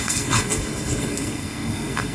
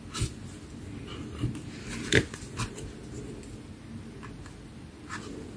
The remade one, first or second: first